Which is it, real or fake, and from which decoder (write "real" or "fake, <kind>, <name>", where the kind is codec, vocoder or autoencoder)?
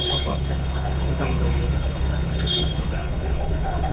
fake, codec, HILCodec